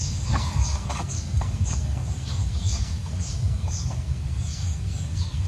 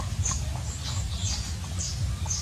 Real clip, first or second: second